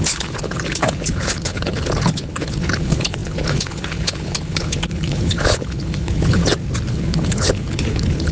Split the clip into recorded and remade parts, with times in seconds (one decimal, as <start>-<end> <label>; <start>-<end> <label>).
0.0-6.4 remade; 6.4-6.9 recorded; 6.9-8.3 remade